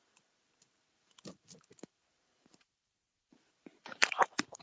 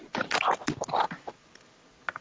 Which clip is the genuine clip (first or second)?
second